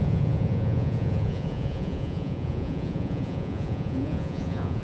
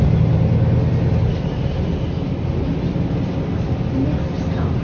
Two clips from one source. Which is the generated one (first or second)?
first